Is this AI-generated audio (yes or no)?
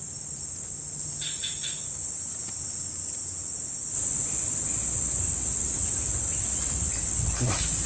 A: no